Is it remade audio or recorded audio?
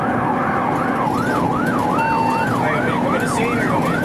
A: recorded